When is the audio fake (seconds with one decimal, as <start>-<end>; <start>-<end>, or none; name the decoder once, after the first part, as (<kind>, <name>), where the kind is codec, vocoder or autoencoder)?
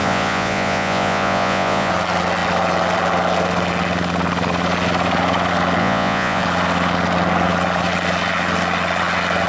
0.0-1.9 (vocoder, Vocos); 5.8-6.4